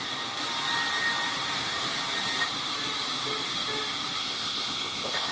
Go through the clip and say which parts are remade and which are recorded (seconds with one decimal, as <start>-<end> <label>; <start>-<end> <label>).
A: 0.0-4.2 recorded; 4.2-5.3 remade